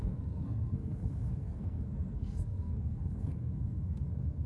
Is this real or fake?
fake